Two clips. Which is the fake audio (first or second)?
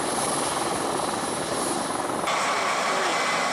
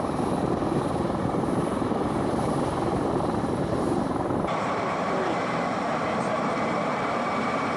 second